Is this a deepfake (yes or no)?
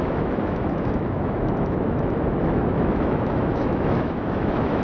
yes